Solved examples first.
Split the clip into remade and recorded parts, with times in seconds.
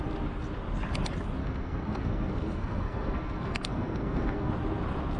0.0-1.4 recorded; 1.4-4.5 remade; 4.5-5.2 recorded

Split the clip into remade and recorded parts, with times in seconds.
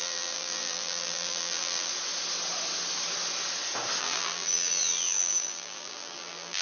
0.0-1.9 remade; 1.9-4.0 recorded; 4.0-6.6 remade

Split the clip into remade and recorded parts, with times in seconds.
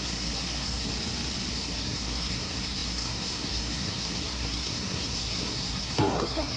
0.0-0.9 remade; 0.9-1.5 recorded; 1.5-6.6 remade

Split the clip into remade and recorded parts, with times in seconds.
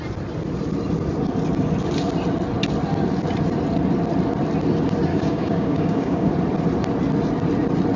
0.0-5.1 recorded; 5.1-6.3 remade; 6.3-8.0 recorded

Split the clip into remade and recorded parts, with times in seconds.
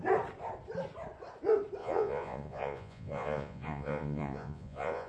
0.0-1.8 recorded; 1.8-5.1 remade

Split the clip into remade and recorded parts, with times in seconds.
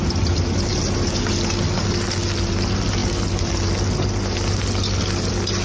0.0-5.6 recorded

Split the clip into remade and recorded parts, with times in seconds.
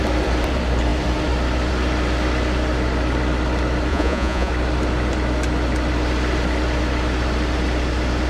0.0-3.9 recorded; 3.9-4.5 remade; 4.5-8.3 recorded